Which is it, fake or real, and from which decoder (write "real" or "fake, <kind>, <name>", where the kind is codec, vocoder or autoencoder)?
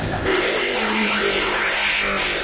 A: fake, codec, ZipCodec